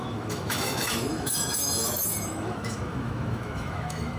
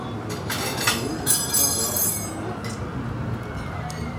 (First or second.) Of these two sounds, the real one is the second